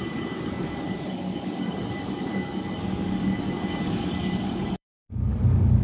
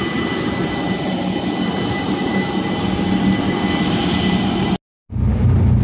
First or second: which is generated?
first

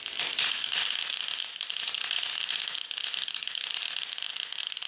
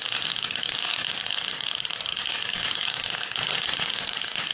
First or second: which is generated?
second